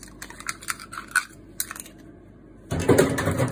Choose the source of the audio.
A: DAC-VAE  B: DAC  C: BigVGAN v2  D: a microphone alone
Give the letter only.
D